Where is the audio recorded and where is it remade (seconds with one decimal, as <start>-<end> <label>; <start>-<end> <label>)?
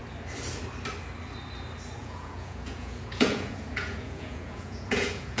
0.0-2.0 recorded; 2.0-5.4 remade